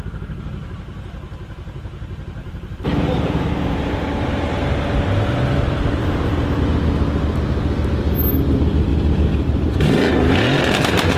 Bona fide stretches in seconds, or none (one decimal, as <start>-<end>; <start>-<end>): 0.0-2.4; 4.1-6.0; 6.6-11.2